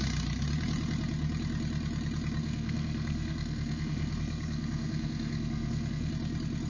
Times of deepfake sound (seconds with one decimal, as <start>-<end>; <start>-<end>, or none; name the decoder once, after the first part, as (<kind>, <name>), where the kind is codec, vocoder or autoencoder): 2.4-6.1 (codec, SNAC)